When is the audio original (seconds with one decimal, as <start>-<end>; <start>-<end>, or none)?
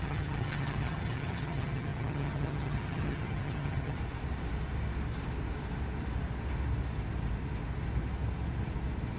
4.0-9.2